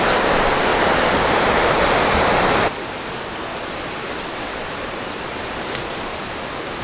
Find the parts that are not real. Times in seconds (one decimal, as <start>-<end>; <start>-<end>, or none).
none